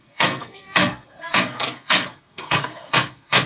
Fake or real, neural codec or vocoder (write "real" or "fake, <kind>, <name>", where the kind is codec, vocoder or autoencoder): fake, codec, SNAC